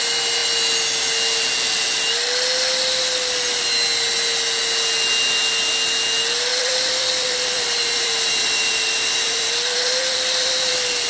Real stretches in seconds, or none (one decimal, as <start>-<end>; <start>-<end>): 0.0-6.5; 10.7-11.1